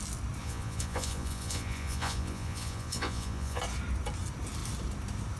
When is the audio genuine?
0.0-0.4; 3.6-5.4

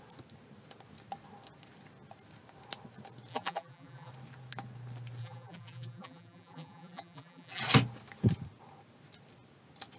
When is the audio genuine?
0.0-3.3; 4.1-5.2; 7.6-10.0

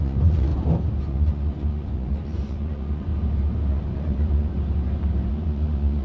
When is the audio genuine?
0.5-1.1; 3.1-3.7; 4.5-5.3

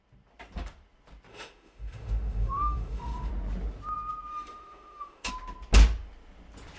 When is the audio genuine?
0.0-1.3; 3.3-4.3; 5.3-6.8